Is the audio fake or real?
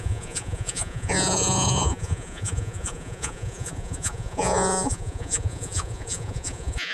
fake